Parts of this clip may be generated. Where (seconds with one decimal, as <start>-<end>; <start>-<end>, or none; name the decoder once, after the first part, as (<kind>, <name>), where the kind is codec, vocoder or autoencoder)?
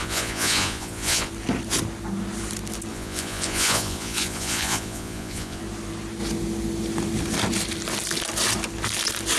0.0-1.3 (vocoder, Vocos); 2.9-5.6